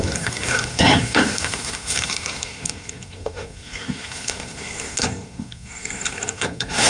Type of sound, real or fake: fake